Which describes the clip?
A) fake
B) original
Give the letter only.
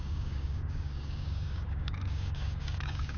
A